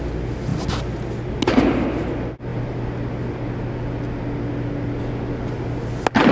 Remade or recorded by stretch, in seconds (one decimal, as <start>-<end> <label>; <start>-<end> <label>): 0.0-6.3 recorded